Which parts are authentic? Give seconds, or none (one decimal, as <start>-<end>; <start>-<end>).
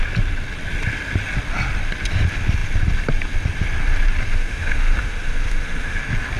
0.0-4.3; 6.0-6.4